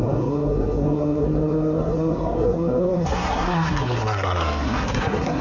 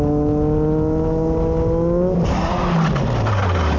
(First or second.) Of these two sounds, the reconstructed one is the first